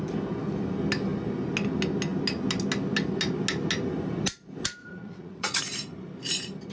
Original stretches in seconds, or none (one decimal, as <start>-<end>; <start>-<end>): 0.0-4.8; 5.6-6.7